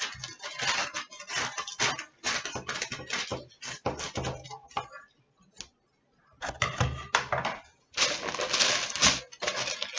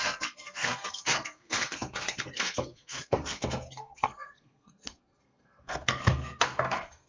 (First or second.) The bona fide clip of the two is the first